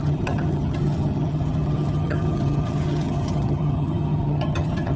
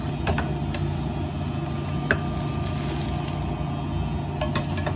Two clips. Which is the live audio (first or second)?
second